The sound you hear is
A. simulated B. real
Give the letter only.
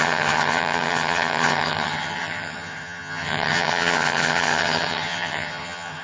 A